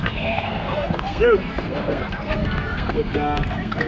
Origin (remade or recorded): remade